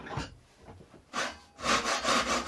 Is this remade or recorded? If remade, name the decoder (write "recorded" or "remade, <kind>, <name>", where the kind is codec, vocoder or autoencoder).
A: recorded